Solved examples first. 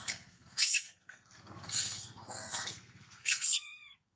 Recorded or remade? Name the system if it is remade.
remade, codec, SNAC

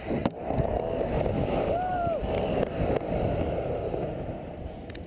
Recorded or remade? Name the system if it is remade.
recorded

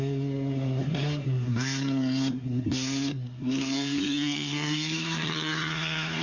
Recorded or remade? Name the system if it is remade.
remade, codec, SNAC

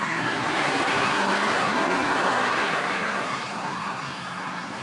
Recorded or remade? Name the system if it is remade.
remade, codec, SNAC